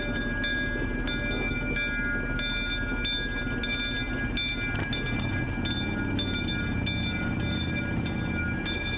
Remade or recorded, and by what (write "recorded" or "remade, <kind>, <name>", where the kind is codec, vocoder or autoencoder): recorded